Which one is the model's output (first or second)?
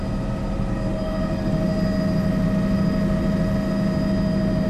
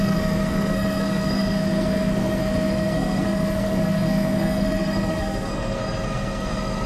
second